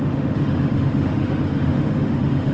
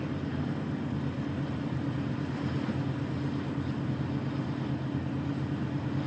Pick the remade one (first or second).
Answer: first